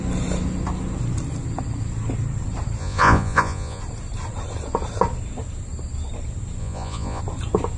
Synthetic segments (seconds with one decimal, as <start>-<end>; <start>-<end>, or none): 2.8-3.8; 6.6-7.2